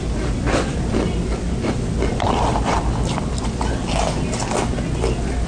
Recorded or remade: recorded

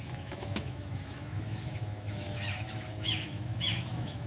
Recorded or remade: remade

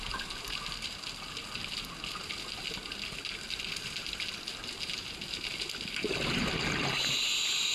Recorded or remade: recorded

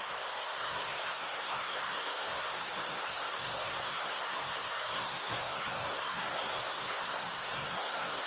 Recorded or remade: remade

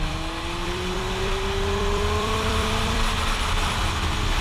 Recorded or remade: remade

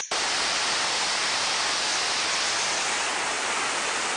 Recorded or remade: recorded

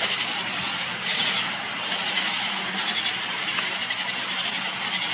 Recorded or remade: recorded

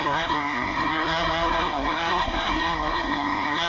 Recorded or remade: remade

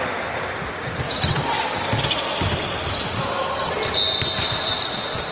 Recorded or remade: recorded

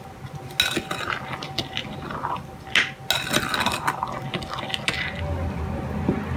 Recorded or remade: recorded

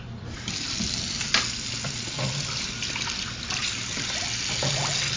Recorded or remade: recorded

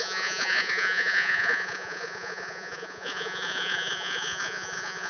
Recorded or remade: remade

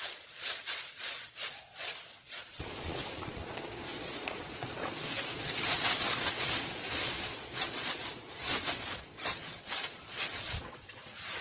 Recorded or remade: remade